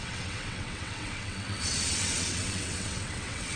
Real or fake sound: fake